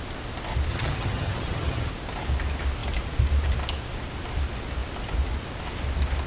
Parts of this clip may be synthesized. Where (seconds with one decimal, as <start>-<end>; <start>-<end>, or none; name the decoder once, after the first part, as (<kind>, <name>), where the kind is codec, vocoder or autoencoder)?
0.7-1.9 (vocoder, HiFi-GAN)